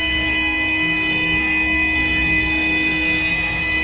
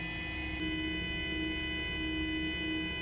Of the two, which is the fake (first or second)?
first